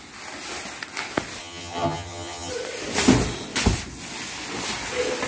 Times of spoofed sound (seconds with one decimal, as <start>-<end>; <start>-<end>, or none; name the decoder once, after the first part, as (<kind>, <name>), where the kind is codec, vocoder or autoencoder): 1.4-2.5 (vocoder, HiFi-GAN)